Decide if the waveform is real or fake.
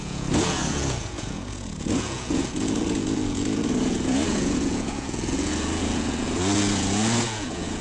fake